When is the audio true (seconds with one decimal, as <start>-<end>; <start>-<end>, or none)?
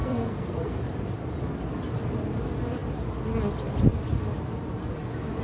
0.8-5.4